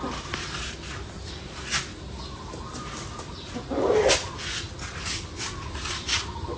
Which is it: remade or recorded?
recorded